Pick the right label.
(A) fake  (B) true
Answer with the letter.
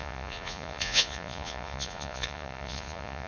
A